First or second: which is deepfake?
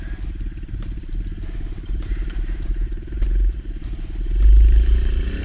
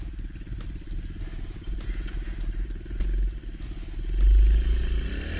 first